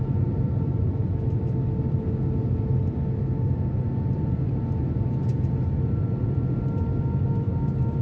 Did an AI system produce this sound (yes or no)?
no